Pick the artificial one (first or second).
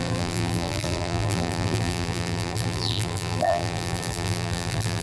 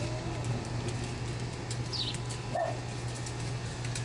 first